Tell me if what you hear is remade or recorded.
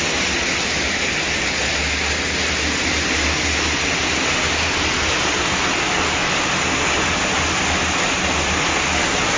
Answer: recorded